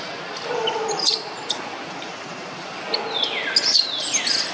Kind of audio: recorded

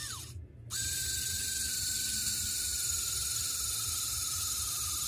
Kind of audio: recorded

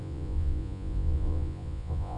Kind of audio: remade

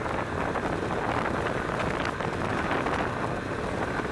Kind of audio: recorded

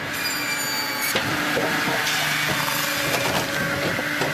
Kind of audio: recorded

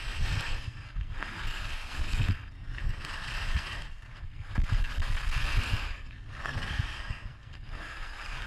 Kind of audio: remade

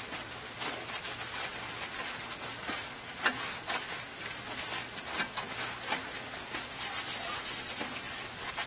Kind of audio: recorded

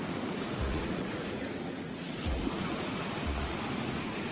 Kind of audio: remade